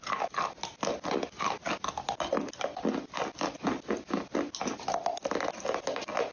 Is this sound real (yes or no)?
yes